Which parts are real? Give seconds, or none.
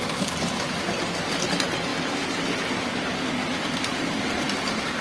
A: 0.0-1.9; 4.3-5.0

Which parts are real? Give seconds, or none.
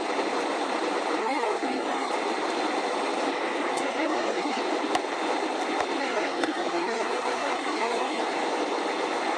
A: 0.0-1.2; 2.1-3.7; 4.6-6.0; 8.2-9.4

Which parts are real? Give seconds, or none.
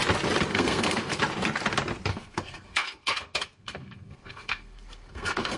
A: 0.0-0.5; 1.2-2.1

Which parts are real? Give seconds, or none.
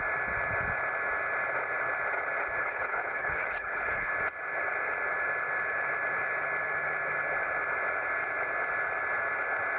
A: 0.0-2.6; 4.1-9.8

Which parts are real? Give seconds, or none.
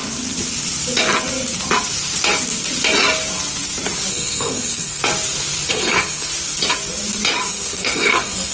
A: 0.0-4.1; 5.0-5.7; 6.3-7.5